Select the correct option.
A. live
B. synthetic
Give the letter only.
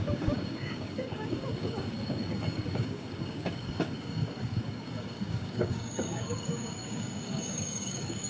B